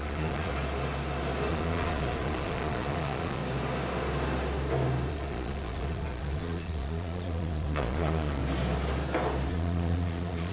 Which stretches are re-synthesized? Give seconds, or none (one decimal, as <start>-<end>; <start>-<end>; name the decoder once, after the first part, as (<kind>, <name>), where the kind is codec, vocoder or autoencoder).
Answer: 0.0-0.5 (vocoder, Vocos); 1.5-3.4; 5.1-8.4; 9.5-10.5